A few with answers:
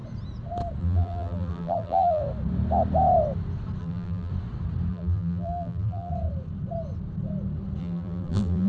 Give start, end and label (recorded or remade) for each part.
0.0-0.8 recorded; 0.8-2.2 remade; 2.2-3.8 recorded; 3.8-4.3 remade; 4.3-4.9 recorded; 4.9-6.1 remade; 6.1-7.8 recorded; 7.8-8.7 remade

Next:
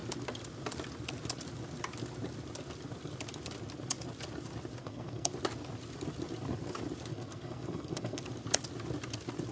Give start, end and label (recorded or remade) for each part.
0.0-4.8 recorded; 4.8-5.3 remade; 5.3-7.1 recorded; 7.1-8.2 remade; 8.2-9.5 recorded

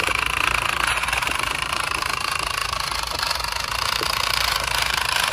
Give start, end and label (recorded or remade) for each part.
0.0-5.3 remade

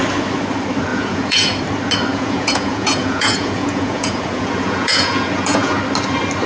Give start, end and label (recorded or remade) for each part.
0.0-0.9 recorded; 0.9-1.6 remade; 1.6-2.1 recorded; 2.1-5.8 remade; 5.8-6.5 recorded

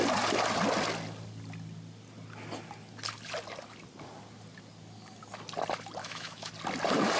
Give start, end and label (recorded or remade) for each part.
0.0-6.0 recorded; 6.0-6.5 remade; 6.5-7.2 recorded

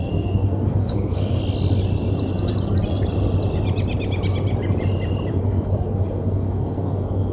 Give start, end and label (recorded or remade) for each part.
0.0-1.4 remade; 1.4-5.3 recorded; 5.3-7.3 remade

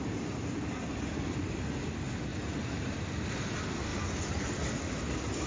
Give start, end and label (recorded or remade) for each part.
0.0-5.5 recorded

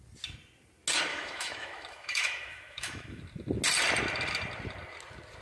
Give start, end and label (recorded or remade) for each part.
0.0-1.1 recorded; 1.1-3.2 remade; 3.2-5.4 recorded